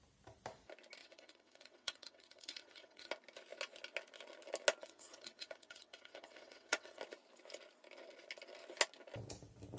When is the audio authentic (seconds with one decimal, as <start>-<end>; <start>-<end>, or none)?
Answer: 0.0-1.0; 3.1-4.8; 7.0-9.8